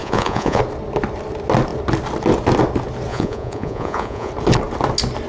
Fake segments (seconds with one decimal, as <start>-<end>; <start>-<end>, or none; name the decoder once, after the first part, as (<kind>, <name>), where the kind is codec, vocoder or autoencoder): 0.0-0.6 (vocoder, Vocos); 3.1-4.3